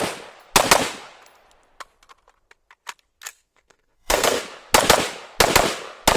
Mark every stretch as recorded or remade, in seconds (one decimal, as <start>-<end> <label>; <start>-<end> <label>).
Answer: 0.0-3.3 recorded; 3.3-4.4 remade; 4.4-6.2 recorded

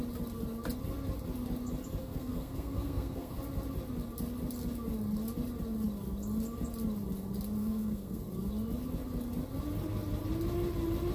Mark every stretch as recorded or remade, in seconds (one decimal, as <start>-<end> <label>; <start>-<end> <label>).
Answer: 0.0-2.0 recorded; 2.0-3.4 remade; 3.4-7.6 recorded; 7.6-8.2 remade; 8.2-11.1 recorded